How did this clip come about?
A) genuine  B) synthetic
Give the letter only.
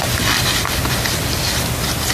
A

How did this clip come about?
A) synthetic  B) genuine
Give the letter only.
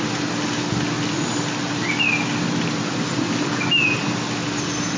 B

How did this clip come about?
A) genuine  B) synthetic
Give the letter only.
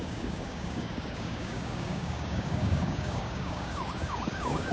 B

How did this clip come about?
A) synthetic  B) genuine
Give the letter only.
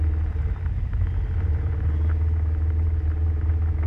B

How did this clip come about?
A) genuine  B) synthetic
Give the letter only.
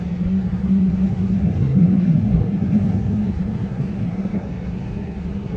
B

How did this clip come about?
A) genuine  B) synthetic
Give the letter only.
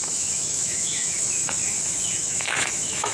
B